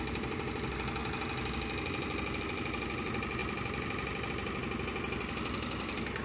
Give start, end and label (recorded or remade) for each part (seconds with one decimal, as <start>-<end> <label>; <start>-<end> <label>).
0.0-6.2 recorded